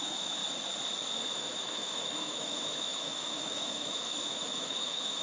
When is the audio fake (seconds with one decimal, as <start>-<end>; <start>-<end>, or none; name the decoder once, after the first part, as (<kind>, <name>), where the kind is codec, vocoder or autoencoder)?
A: 0.0-0.4 (autoencoder, DAC-VAE); 1.3-5.2